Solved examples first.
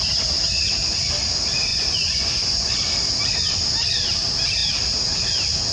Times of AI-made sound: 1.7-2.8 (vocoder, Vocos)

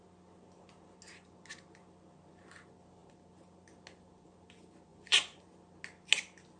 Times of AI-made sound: 4.9-5.4 (vocoder, Vocos)

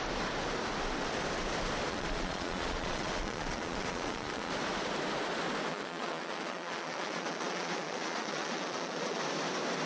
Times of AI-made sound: 1.9-4.5 (vocoder, Vocos); 5.7-9.2